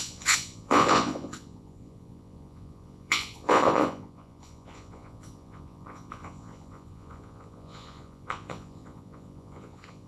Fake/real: fake